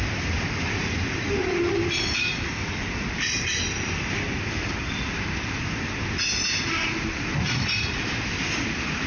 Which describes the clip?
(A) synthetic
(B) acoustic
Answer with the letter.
B